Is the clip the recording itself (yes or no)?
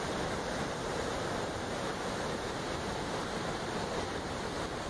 no